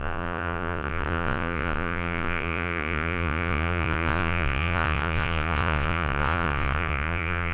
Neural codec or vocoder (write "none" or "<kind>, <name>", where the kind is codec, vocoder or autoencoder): vocoder, Vocos